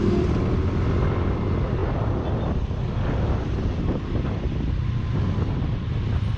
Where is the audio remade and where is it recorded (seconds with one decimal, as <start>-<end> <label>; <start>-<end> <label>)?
0.0-6.4 recorded